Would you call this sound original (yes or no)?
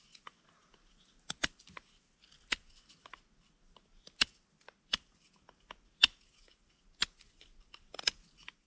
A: yes